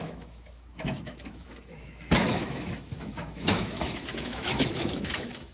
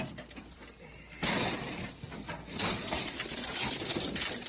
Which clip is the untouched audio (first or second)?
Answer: second